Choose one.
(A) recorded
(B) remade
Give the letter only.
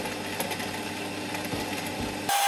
A